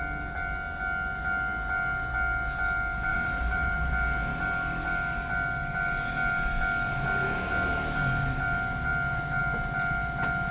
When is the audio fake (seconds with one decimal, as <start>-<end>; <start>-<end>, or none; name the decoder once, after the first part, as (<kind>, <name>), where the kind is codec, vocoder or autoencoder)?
3.1-3.9 (vocoder, BigVGAN v2)